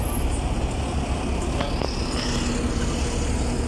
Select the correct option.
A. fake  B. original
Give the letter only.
B